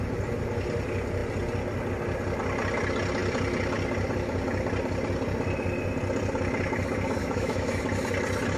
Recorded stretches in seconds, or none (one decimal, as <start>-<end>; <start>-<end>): 0.0-7.2; 7.8-8.6